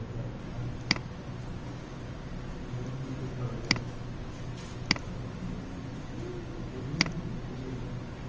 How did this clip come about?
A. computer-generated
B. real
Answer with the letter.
B